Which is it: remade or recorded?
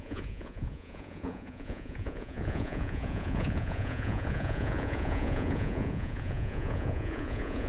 remade